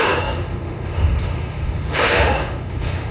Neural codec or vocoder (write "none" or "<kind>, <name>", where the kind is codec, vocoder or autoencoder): autoencoder, DAC-VAE